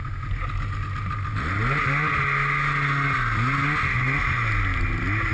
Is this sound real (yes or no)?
yes